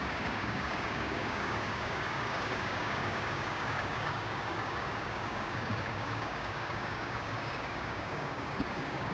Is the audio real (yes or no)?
no